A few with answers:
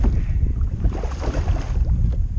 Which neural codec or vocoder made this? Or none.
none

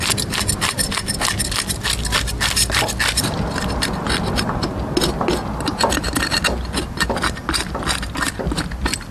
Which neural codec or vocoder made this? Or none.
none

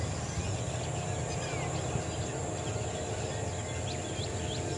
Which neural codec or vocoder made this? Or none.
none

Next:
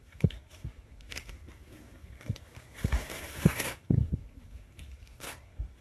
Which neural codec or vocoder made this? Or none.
codec, SNAC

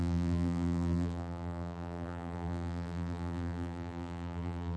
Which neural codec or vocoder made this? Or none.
vocoder, BigVGAN v2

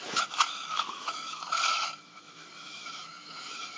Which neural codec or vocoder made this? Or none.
autoencoder, DAC-VAE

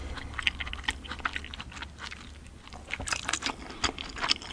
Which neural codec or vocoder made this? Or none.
none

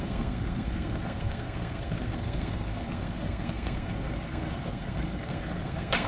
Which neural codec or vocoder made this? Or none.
codec, SNAC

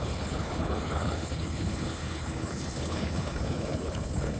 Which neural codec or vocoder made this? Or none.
codec, HILCodec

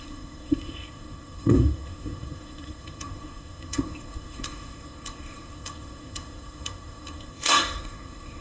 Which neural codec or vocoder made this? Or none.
codec, SNAC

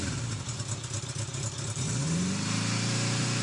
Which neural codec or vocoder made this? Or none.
vocoder, BigVGAN v2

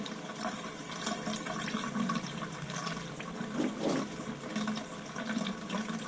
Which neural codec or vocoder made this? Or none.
none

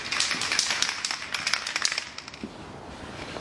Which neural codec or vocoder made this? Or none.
none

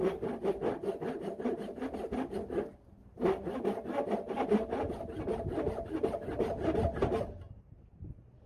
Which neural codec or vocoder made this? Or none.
none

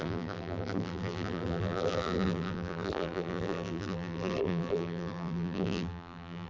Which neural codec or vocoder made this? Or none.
vocoder, BigVGAN v2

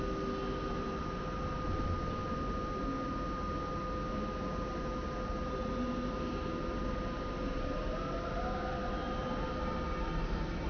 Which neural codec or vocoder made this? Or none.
none